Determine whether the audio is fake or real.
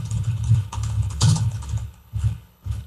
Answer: fake